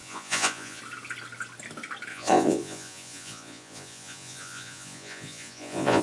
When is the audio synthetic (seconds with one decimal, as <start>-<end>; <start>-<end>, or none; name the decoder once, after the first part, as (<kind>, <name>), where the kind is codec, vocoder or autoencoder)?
0.0-0.8 (vocoder, Vocos); 2.1-6.0